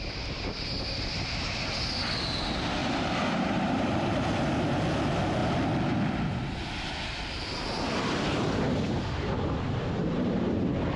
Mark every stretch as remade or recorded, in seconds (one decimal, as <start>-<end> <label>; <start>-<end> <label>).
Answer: 0.0-2.8 recorded; 2.8-4.3 remade; 4.3-10.0 recorded; 10.0-10.6 remade; 10.6-11.0 recorded